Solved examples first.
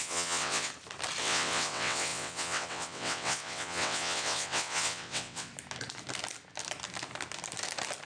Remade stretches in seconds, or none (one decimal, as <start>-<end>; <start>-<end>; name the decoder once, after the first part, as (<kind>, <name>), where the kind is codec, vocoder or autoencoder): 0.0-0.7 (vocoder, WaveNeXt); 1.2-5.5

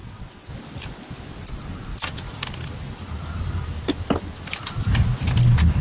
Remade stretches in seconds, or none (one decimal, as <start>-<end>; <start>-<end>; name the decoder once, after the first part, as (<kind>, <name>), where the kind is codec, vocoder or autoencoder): 0.0-0.5 (vocoder, WaveNeXt)

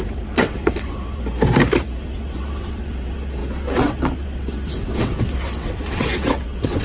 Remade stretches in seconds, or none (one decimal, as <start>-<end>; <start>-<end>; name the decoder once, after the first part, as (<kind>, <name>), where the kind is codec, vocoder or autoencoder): 0.0-1.2 (vocoder, WaveNeXt); 1.8-6.8

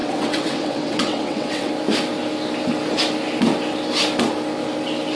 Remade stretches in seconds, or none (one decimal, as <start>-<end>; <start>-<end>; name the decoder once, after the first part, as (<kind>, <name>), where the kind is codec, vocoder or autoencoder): 0.0-1.7 (vocoder, WaveNeXt)